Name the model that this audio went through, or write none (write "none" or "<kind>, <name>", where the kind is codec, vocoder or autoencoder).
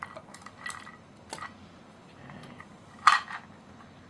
none